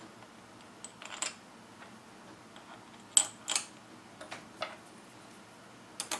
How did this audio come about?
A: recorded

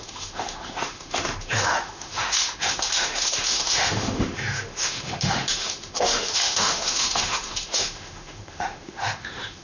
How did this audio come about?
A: remade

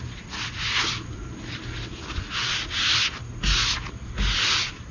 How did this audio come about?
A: recorded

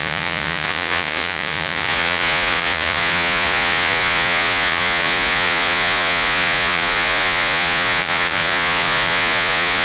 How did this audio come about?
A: remade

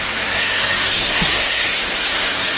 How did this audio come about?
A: remade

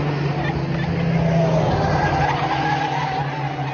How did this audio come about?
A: recorded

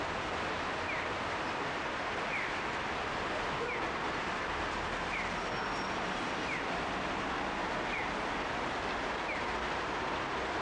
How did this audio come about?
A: recorded